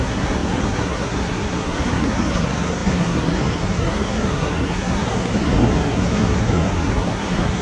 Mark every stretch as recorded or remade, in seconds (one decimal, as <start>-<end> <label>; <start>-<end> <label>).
0.0-7.6 remade